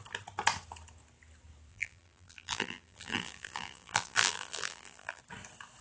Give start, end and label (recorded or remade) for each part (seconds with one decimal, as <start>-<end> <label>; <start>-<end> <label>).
0.0-1.7 recorded; 1.7-5.2 remade; 5.2-5.8 recorded